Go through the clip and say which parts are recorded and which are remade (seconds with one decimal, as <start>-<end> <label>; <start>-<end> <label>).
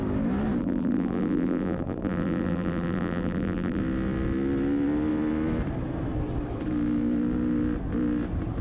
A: 0.0-0.6 recorded; 0.6-3.8 remade; 3.8-8.6 recorded